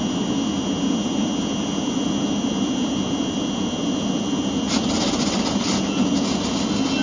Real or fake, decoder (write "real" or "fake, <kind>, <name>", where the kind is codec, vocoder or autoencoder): real